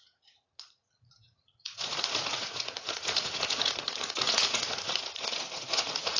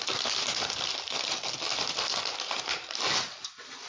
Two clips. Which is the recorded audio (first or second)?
second